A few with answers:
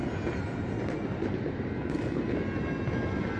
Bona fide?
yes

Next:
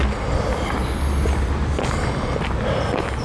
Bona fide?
yes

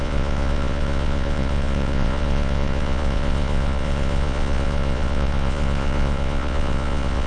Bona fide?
no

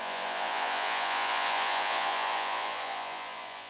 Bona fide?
no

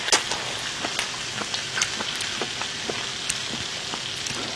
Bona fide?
yes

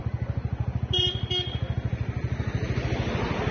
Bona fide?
yes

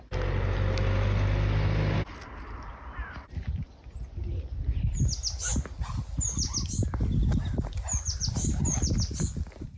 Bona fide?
yes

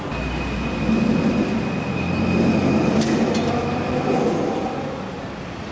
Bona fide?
yes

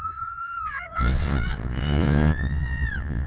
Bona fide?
no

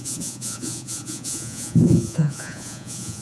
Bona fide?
no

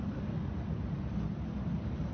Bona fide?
yes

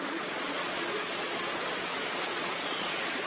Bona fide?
no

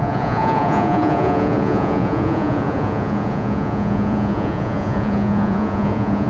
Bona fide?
no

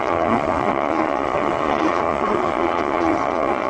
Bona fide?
no